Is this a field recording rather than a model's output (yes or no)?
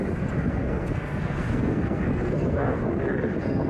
no